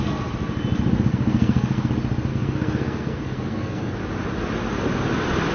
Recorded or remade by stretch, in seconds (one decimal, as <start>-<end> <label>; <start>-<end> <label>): 0.0-1.1 recorded; 1.1-1.9 remade; 1.9-2.3 recorded; 2.3-4.0 remade; 4.0-5.5 recorded